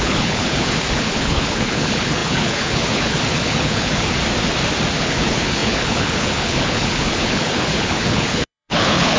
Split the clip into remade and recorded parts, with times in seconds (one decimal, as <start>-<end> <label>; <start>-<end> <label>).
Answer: 0.0-4.2 remade; 4.2-5.0 recorded; 5.0-9.2 remade